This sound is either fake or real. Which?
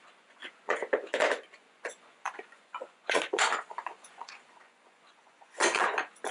fake